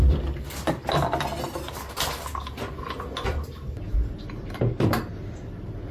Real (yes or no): yes